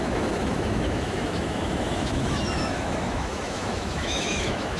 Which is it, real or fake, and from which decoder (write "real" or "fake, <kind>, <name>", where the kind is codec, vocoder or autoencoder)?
fake, autoencoder, DAC-VAE